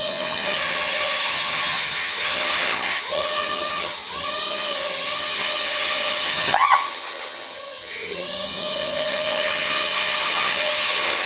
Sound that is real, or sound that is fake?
fake